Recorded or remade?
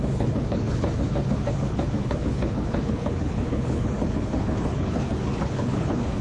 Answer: remade